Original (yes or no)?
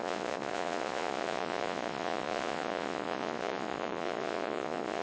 no